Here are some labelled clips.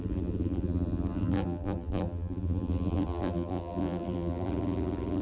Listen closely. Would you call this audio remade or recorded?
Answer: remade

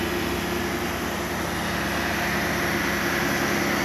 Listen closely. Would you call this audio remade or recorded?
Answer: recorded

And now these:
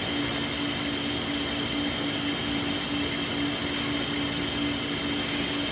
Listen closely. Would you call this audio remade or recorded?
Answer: recorded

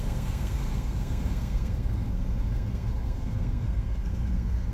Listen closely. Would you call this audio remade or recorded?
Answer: remade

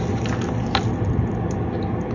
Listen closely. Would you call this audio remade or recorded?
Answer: recorded